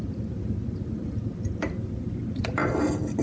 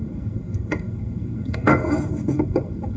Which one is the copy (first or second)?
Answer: second